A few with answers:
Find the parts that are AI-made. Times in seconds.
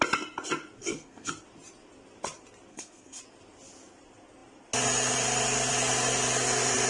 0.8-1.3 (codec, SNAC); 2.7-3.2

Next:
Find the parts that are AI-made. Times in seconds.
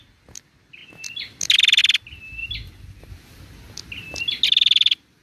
none